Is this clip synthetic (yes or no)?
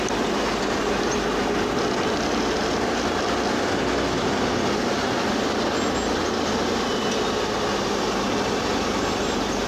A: no